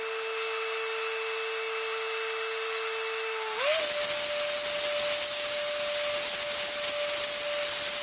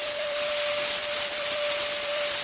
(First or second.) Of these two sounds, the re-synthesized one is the second